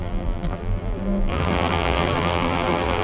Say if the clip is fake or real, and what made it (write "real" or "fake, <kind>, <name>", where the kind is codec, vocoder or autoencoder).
fake, vocoder, BigVGAN v2